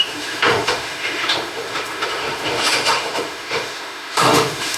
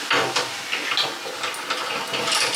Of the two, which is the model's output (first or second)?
first